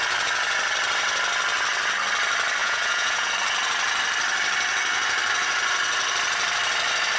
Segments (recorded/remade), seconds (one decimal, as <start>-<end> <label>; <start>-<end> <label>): 0.0-2.6 recorded; 2.6-3.3 remade; 3.3-7.2 recorded